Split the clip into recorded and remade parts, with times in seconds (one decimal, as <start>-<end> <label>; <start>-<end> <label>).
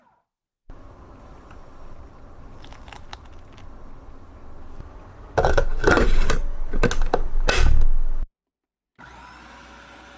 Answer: 0.0-10.2 recorded